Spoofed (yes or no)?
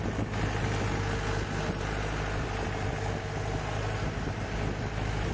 no